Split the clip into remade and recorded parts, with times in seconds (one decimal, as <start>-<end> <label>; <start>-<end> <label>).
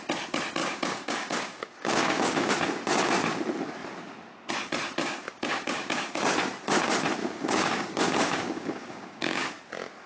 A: 0.0-0.6 recorded; 0.6-2.5 remade; 2.5-5.0 recorded; 5.0-6.2 remade; 6.2-7.2 recorded; 7.2-9.5 remade; 9.5-10.1 recorded